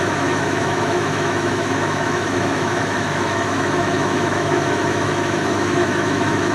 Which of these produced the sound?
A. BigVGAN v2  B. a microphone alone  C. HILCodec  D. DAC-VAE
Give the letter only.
D